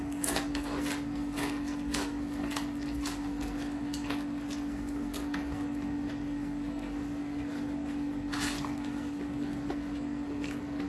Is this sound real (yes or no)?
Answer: no